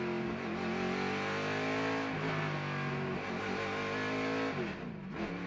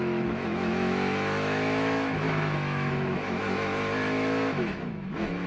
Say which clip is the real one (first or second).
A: first